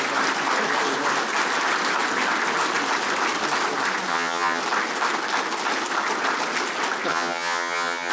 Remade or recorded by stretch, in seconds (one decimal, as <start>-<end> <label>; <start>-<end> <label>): 0.0-4.1 recorded; 4.1-4.6 remade; 4.6-7.1 recorded; 7.1-8.1 remade